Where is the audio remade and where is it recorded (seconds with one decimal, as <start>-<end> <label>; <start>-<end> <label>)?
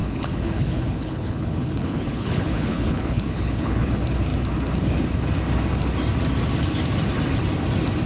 0.0-3.9 remade; 3.9-8.1 recorded